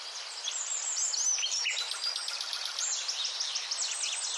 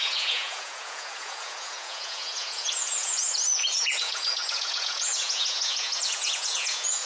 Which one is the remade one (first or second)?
second